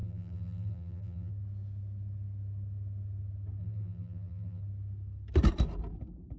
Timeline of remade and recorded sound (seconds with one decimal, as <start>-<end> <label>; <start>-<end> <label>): 0.0-1.3 remade; 1.3-3.6 recorded; 3.6-4.6 remade; 4.6-6.4 recorded